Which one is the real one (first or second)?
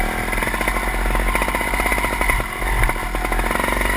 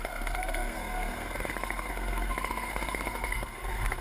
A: first